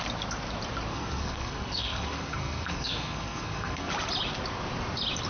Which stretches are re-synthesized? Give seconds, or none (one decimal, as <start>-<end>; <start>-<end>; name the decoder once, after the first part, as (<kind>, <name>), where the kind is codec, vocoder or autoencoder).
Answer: 0.9-3.9 (codec, SNAC)